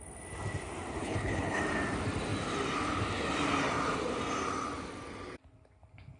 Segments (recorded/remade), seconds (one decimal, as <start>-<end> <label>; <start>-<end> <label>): 0.0-1.0 recorded; 1.0-1.6 remade; 1.6-6.2 recorded